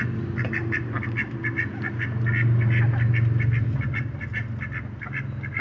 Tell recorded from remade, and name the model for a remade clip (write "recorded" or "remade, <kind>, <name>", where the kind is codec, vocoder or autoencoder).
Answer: recorded